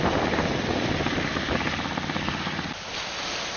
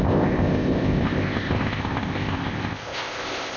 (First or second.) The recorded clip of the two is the first